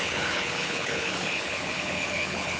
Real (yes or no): no